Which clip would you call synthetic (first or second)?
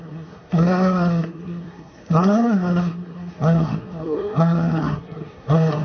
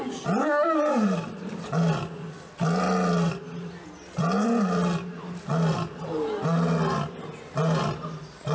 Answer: first